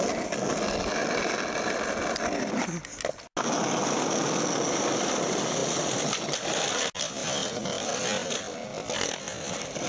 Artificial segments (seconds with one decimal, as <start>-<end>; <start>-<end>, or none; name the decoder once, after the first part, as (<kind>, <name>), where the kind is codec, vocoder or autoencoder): none